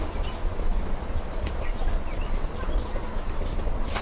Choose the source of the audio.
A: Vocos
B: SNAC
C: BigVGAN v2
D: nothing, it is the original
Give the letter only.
D